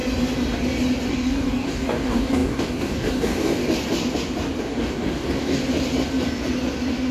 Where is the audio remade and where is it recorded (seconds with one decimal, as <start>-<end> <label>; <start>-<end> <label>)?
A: 0.0-1.1 recorded; 1.1-3.6 remade; 3.6-4.6 recorded; 4.6-5.6 remade; 5.6-7.1 recorded